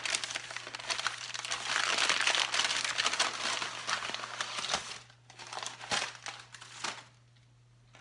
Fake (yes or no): no